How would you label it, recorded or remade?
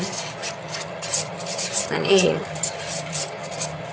remade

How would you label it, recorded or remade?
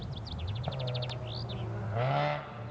recorded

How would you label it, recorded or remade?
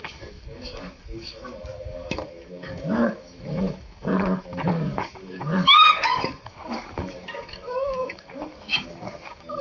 remade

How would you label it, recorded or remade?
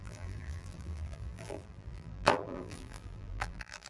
remade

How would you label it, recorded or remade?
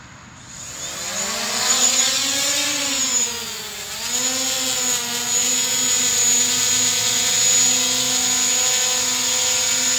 recorded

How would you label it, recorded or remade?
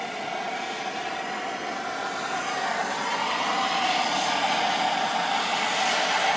recorded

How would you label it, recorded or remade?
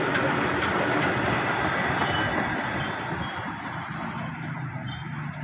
recorded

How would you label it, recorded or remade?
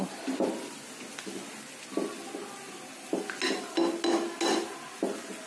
recorded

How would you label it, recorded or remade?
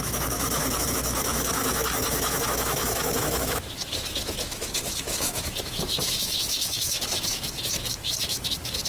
remade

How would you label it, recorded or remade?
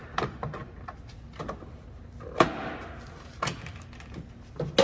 recorded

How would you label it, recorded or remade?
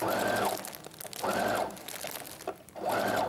recorded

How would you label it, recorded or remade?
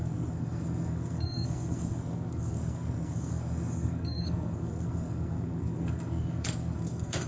remade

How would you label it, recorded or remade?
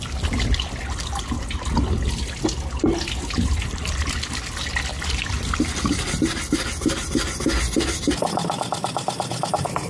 recorded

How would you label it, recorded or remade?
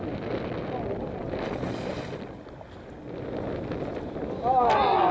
recorded